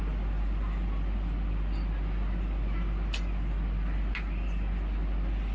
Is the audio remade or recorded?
recorded